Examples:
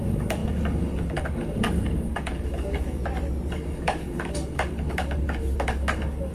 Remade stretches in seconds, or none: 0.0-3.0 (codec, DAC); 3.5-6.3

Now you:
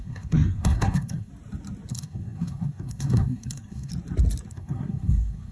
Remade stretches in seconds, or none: 0.0-1.3 (codec, SNAC); 1.9-3.9; 4.5-5.5

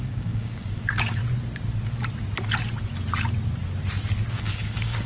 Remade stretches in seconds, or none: 0.0-1.2 (codec, DAC); 4.3-5.1

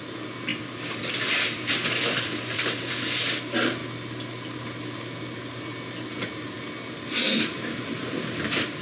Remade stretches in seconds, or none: 0.5-2.9 (vocoder, BigVGAN v2)

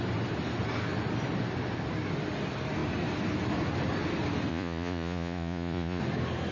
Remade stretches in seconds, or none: 4.5-6.0 (vocoder, Vocos)

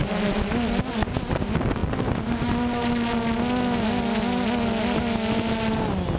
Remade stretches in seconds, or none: none

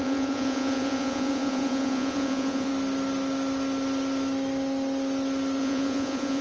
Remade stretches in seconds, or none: 0.0-2.7 (vocoder, Vocos); 5.6-6.4

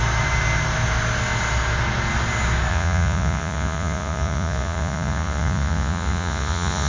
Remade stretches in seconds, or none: 2.7-6.9 (vocoder, Vocos)